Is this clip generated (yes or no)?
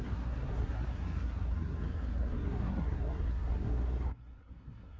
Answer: yes